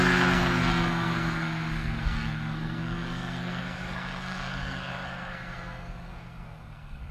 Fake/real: fake